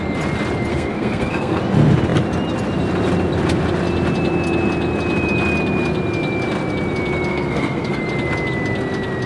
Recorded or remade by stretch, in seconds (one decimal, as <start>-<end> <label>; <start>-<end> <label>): 0.0-0.7 recorded; 0.7-1.6 remade; 1.6-7.3 recorded; 7.3-8.0 remade; 8.0-9.3 recorded